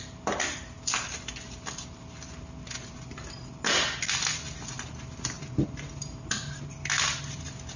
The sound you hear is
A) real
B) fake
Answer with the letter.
A